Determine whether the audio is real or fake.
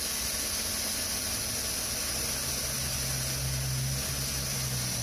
real